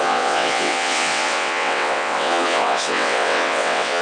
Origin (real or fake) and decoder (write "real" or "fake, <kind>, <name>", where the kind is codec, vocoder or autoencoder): fake, vocoder, WaveNeXt